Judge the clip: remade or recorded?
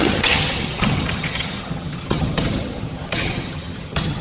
remade